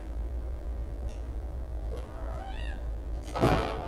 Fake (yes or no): yes